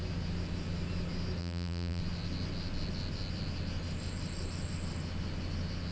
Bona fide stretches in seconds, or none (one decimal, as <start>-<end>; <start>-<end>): 0.0-1.4; 2.0-5.9